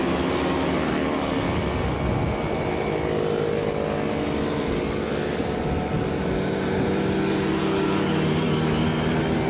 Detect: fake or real real